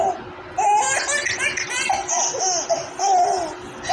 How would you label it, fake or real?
real